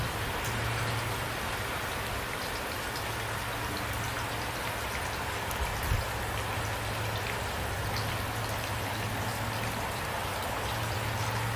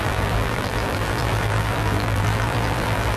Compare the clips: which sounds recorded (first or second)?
first